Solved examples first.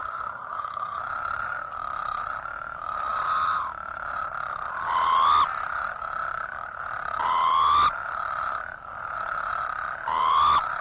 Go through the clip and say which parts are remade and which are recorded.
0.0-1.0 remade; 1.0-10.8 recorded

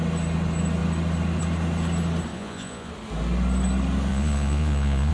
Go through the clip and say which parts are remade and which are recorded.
0.0-2.3 recorded; 2.3-2.9 remade; 2.9-4.1 recorded; 4.1-5.1 remade